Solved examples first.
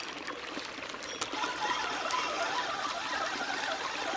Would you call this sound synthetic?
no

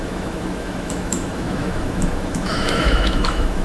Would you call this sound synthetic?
yes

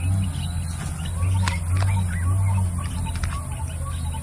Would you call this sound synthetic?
no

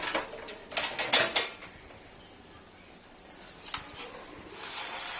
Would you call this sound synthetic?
no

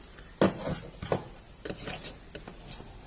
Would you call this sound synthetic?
no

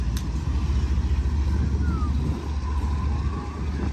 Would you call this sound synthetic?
no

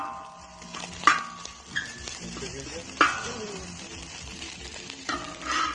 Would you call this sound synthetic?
yes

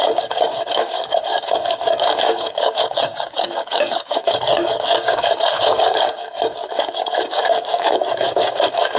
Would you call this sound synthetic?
yes